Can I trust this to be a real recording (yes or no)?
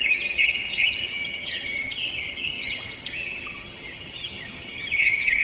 no